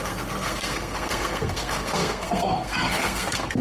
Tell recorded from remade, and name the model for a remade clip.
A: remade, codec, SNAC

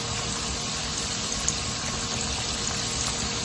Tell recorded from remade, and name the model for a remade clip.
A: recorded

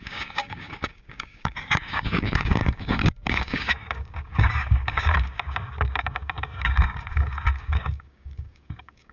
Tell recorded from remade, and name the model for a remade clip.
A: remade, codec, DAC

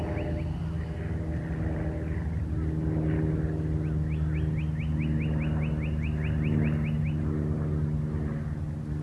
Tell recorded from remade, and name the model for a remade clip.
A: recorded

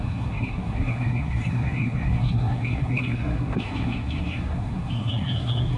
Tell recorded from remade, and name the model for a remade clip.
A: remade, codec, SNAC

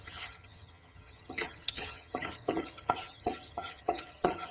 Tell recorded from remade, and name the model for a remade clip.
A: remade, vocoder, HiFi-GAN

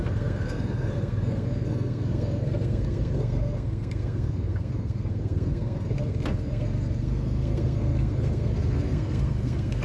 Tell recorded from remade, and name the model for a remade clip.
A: remade, codec, SNAC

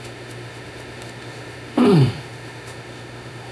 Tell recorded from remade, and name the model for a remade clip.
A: remade, autoencoder, DAC-VAE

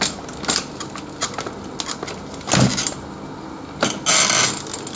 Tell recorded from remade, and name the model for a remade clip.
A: recorded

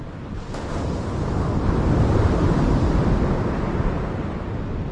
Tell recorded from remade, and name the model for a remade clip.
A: recorded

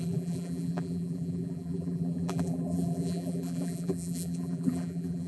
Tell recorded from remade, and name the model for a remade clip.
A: remade, vocoder, BigVGAN v2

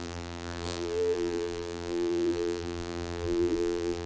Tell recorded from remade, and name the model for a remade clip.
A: remade, vocoder, BigVGAN v2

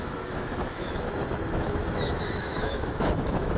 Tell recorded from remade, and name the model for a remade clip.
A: remade, autoencoder, DAC-VAE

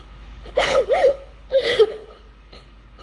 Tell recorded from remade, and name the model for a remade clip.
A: remade, codec, HILCodec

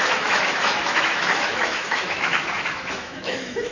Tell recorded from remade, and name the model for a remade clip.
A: remade, autoencoder, DAC-VAE